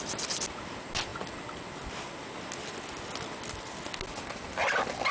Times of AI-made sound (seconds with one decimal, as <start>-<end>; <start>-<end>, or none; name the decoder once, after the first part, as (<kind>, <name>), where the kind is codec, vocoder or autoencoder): none